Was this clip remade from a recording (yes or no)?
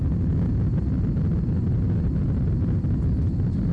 no